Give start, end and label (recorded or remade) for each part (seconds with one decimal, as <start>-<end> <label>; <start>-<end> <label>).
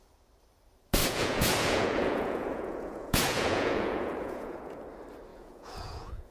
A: 0.0-1.0 recorded; 1.0-4.8 remade; 4.8-5.3 recorded; 5.3-6.3 remade